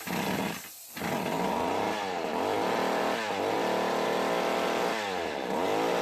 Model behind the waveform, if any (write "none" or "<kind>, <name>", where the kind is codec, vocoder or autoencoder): none